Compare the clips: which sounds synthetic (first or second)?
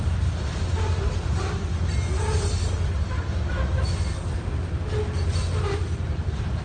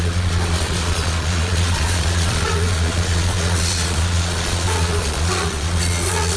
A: second